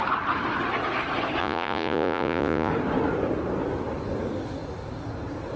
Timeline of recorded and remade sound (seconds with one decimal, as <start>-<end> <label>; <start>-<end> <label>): 0.0-1.4 recorded; 1.4-2.7 remade; 2.7-5.6 recorded